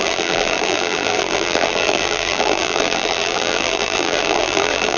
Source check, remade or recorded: remade